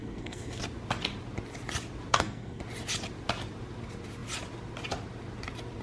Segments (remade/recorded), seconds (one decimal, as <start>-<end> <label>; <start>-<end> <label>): 0.0-0.6 remade; 0.6-2.1 recorded; 2.1-2.6 remade; 2.6-5.8 recorded